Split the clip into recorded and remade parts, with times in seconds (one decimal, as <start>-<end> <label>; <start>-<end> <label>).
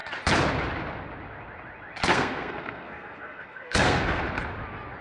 0.0-2.1 recorded; 2.1-4.2 remade; 4.2-5.0 recorded